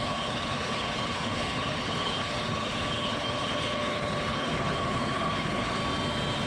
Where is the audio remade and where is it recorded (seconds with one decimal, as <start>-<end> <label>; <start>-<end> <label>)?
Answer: 0.0-5.8 remade; 5.8-6.5 recorded